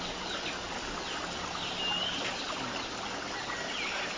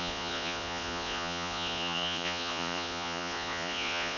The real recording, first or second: first